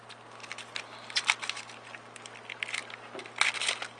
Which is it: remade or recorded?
recorded